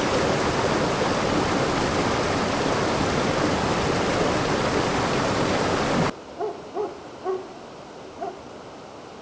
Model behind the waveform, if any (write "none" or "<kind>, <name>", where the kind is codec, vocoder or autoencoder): none